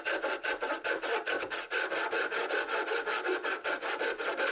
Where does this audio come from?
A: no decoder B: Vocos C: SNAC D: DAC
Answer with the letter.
A